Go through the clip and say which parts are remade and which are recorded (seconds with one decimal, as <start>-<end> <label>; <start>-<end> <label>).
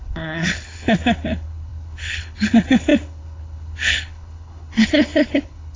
0.0-5.8 remade